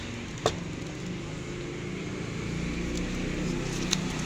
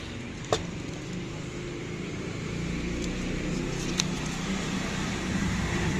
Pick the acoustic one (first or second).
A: first